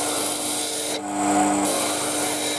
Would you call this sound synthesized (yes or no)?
no